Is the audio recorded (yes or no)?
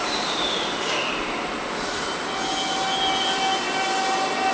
yes